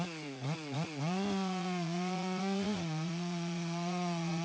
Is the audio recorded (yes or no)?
no